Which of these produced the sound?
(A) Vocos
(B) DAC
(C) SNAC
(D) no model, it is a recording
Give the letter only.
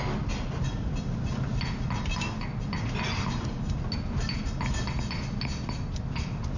D